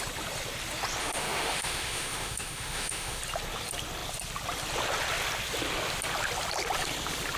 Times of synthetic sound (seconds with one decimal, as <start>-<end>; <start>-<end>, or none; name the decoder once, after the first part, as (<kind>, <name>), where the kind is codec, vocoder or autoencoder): 1.0-3.2 (autoencoder, DAC-VAE)